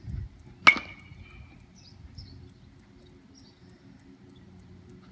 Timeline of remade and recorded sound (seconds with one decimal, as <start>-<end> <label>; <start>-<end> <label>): 0.0-5.1 recorded